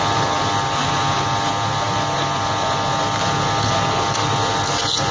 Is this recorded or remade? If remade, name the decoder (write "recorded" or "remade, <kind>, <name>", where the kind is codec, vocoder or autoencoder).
recorded